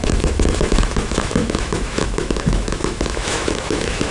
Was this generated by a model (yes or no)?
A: yes